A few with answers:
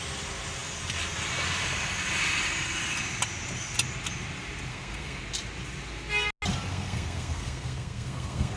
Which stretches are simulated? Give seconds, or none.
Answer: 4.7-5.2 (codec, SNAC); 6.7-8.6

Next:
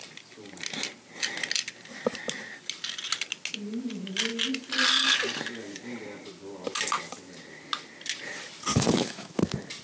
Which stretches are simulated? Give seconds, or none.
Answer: 8.7-9.4 (autoencoder, DAC-VAE)

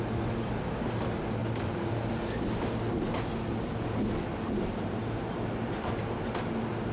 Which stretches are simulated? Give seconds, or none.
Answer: none